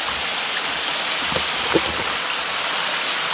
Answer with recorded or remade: recorded